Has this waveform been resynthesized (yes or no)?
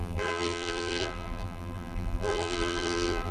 yes